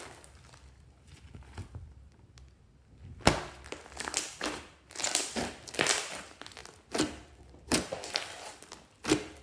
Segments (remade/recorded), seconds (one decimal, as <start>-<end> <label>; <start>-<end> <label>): 0.0-9.4 recorded

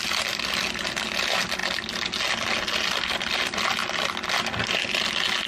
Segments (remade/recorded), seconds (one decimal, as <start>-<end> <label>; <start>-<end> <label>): 0.0-5.5 recorded

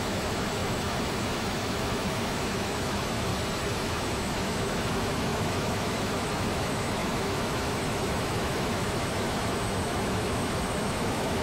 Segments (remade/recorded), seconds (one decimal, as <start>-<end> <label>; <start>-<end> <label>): 0.0-3.3 remade; 3.3-3.8 recorded; 3.8-11.4 remade

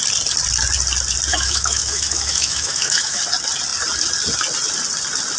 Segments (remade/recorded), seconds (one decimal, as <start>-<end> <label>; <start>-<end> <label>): 0.0-1.3 recorded; 1.3-3.2 remade; 3.2-5.4 recorded

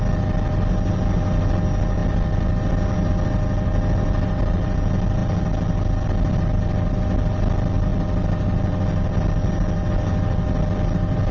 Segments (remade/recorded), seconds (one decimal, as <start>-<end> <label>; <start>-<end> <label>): 0.0-11.3 recorded

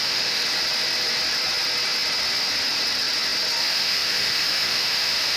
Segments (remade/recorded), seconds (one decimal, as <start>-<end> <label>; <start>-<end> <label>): 0.0-0.4 remade; 0.4-3.6 recorded; 3.6-5.4 remade